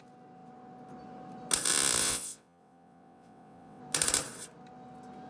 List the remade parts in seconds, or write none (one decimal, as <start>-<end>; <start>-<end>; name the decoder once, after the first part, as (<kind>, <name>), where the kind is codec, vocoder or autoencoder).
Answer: 2.0-3.8 (vocoder, WaveNeXt)